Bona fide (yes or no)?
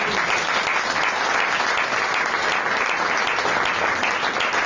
yes